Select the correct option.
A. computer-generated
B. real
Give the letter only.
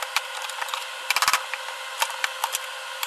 B